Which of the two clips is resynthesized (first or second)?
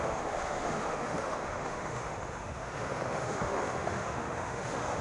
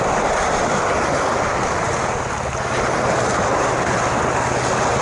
first